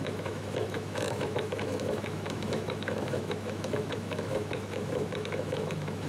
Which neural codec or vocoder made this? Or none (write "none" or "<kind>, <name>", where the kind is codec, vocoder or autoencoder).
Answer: autoencoder, DAC-VAE